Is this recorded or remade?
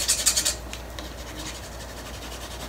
recorded